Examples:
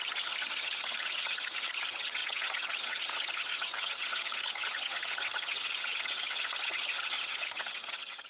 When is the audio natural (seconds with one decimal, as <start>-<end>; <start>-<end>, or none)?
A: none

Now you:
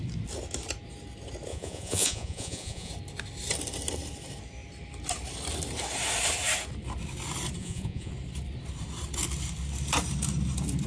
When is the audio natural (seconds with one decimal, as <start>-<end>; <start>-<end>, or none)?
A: 0.0-1.5; 2.9-7.6; 8.1-10.9

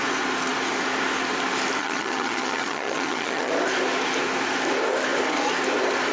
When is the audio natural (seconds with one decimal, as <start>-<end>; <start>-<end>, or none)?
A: 0.0-1.8; 3.5-6.1

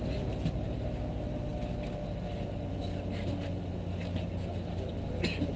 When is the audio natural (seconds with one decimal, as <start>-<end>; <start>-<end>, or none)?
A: 0.0-5.6

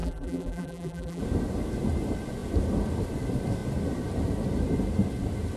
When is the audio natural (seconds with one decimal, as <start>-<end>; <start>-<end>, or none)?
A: 1.2-5.6

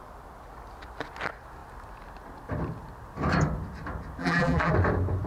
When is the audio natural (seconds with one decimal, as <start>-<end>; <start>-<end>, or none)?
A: 0.0-4.2; 4.7-5.3

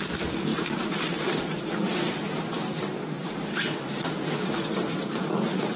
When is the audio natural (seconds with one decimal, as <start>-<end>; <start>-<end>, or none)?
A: 0.0-0.5; 4.0-5.0

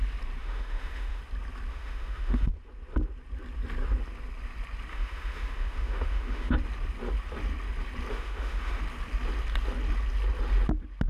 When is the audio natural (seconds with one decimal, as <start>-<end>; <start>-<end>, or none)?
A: 0.0-0.4; 1.2-1.7; 2.5-4.9; 6.5-8.1; 8.8-11.1